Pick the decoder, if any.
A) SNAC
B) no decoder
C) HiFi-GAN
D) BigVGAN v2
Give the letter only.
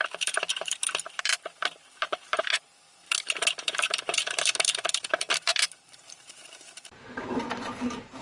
D